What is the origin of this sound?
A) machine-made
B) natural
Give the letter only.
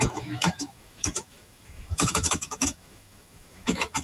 A